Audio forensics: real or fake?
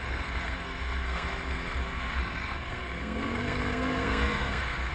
fake